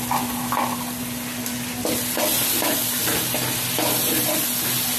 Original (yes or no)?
yes